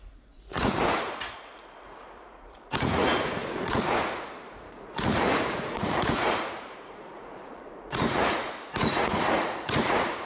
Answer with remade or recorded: remade